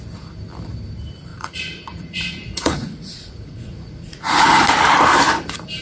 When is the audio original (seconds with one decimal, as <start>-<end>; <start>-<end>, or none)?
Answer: 0.0-1.3; 4.7-5.8